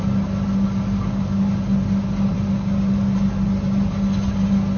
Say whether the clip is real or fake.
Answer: real